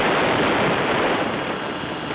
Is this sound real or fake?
real